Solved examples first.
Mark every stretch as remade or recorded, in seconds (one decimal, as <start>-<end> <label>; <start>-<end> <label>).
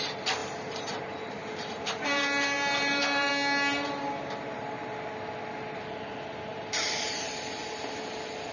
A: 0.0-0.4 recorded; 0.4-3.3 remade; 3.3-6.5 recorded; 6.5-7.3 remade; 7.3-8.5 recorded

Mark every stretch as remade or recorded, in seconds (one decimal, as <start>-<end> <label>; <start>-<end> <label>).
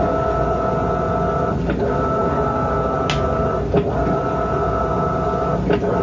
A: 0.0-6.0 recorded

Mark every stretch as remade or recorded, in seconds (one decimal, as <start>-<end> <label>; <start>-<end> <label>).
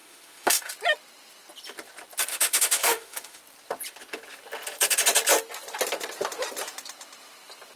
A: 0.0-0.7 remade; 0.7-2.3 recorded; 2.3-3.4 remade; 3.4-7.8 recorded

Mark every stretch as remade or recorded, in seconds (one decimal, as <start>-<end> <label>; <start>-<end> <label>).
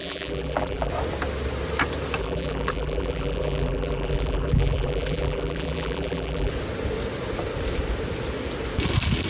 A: 0.0-0.9 remade; 0.9-2.2 recorded; 2.2-6.5 remade; 6.5-9.3 recorded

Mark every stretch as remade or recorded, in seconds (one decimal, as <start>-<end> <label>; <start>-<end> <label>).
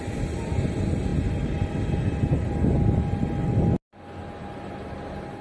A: 0.0-5.4 recorded